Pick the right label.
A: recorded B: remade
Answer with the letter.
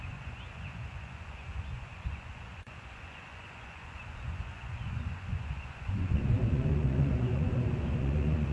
B